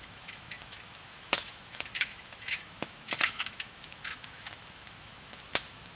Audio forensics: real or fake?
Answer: fake